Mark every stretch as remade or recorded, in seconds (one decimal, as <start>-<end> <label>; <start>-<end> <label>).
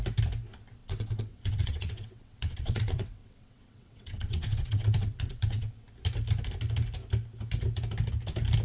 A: 0.0-0.8 recorded; 0.8-5.7 remade; 5.7-8.6 recorded